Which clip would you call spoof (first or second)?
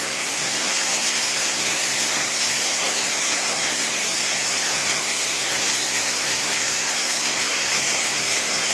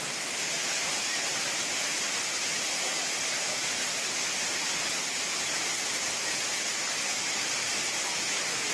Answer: first